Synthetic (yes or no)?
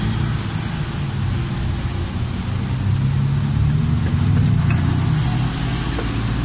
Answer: no